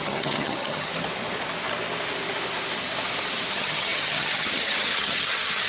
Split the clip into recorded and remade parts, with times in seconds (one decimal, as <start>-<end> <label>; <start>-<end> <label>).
0.0-0.9 remade; 0.9-3.5 recorded; 3.5-5.7 remade